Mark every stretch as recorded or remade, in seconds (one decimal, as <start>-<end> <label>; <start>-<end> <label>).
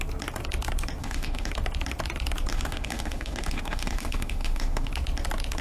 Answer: 0.0-1.0 recorded; 1.0-1.5 remade; 1.5-2.5 recorded; 2.5-4.9 remade; 4.9-5.6 recorded